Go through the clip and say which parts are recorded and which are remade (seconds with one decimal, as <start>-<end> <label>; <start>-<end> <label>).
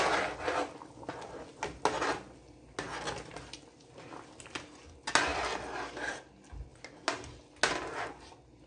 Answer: 0.0-8.7 recorded